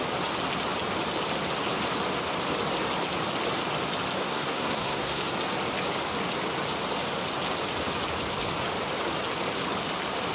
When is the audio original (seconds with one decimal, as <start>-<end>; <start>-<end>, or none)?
0.0-4.2; 5.2-10.3